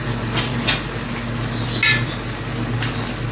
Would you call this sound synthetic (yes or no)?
no